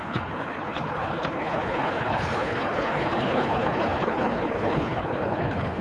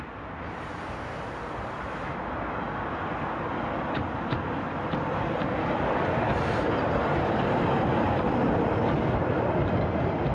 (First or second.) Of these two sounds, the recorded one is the second